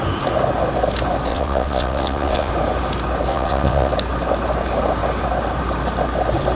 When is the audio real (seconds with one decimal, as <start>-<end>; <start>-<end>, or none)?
0.0-1.3; 2.5-3.3; 3.9-6.5